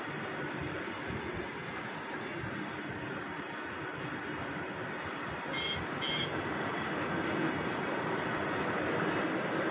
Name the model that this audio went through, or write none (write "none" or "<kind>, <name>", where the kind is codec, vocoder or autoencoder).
none